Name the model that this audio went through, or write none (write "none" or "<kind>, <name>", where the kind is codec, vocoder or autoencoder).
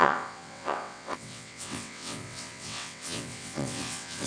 vocoder, WaveNeXt